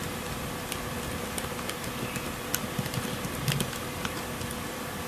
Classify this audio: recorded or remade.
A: recorded